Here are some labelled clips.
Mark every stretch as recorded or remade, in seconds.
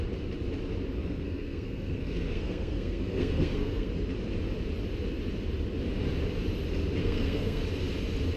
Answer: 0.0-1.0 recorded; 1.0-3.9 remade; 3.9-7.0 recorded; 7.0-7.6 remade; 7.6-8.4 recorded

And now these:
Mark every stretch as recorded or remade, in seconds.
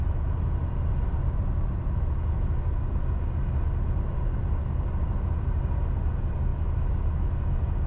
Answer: 0.0-7.9 recorded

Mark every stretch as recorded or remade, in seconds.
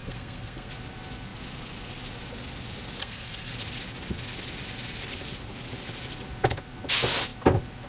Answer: 0.0-0.7 remade; 0.7-3.0 recorded; 3.0-3.5 remade; 3.5-7.9 recorded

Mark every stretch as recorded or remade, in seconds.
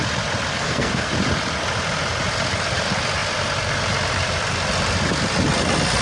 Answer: 0.0-0.5 recorded; 0.5-1.1 remade; 1.1-6.0 recorded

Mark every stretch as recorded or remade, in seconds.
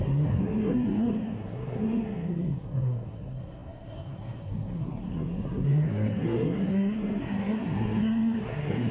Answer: 0.0-8.9 remade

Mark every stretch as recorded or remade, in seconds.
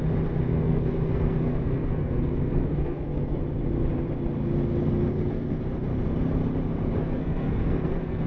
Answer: 0.0-0.5 recorded; 0.5-3.4 remade; 3.4-5.1 recorded; 5.1-5.6 remade; 5.6-7.0 recorded; 7.0-8.3 remade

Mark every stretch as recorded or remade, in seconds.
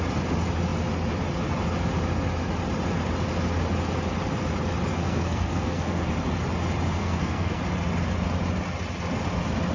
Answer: 0.0-4.9 recorded; 4.9-6.1 remade; 6.1-7.0 recorded; 7.0-7.6 remade; 7.6-9.7 recorded